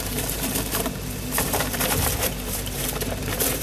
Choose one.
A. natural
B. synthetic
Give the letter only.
B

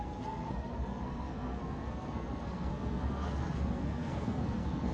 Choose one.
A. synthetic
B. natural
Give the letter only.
A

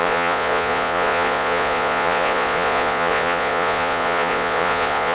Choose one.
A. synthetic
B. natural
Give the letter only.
A